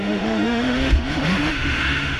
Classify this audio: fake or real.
fake